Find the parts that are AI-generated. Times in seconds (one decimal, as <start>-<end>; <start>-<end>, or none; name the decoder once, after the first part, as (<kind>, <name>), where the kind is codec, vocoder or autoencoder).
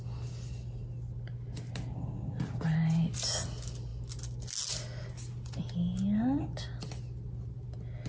none